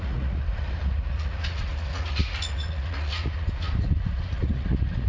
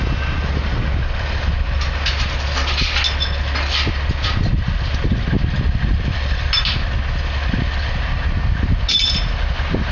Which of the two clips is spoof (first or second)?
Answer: first